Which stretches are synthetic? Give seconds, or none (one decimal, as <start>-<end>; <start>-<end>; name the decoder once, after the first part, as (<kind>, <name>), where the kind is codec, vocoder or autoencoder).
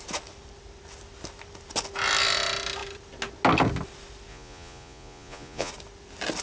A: 4.3-5.7 (vocoder, Vocos)